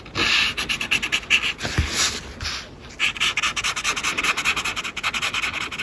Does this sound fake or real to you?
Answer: real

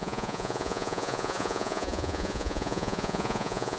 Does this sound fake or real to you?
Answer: fake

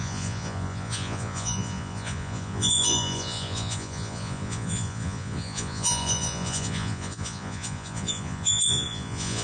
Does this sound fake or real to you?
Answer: fake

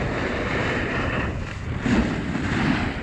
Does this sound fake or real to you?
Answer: real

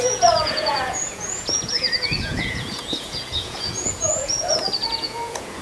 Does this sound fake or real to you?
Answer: fake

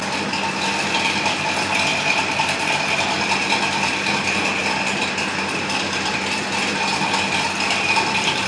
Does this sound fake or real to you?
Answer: real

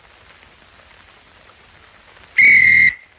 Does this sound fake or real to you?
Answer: real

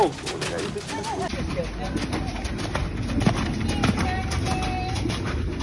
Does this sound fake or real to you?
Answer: real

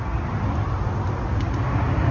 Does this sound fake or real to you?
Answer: real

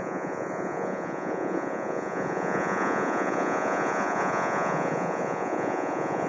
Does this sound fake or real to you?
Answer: fake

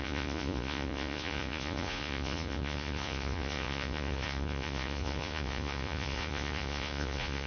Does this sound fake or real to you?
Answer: fake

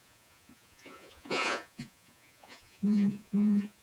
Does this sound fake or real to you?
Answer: fake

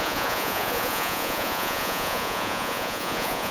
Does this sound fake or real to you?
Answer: fake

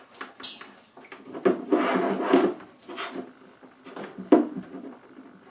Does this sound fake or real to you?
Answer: real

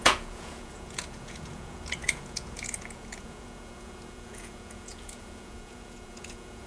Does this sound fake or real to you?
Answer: fake